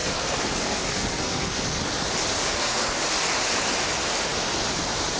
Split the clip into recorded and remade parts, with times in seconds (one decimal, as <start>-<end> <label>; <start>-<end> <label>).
0.0-1.8 remade; 1.8-2.4 recorded; 2.4-3.0 remade; 3.0-5.2 recorded